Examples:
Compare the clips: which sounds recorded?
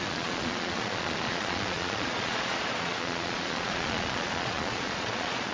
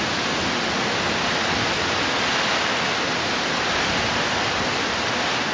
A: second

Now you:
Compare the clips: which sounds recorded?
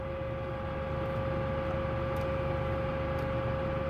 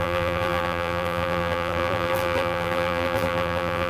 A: first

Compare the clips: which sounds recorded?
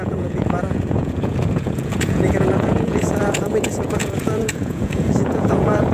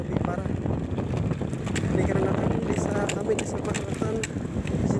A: second